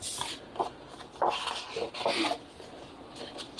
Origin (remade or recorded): recorded